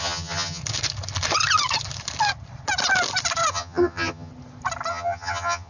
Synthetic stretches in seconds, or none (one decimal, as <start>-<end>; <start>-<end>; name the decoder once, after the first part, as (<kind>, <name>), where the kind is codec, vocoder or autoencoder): 0.0-0.6 (vocoder, HiFi-GAN); 3.5-4.3; 4.9-5.7